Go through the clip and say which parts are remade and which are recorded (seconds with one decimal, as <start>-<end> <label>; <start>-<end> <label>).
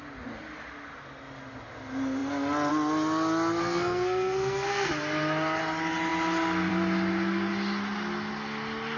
0.0-3.6 recorded; 3.6-4.9 remade; 4.9-9.0 recorded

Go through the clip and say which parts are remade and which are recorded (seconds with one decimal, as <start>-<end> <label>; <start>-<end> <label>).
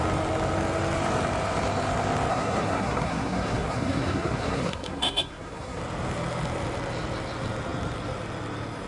0.0-2.3 recorded; 2.3-5.8 remade; 5.8-8.9 recorded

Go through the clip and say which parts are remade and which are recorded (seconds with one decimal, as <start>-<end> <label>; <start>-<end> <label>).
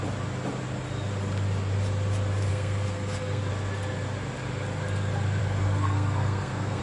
0.0-2.5 recorded; 2.5-3.4 remade; 3.4-5.4 recorded; 5.4-6.8 remade